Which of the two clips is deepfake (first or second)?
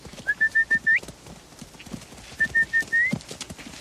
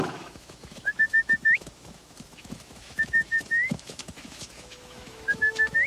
second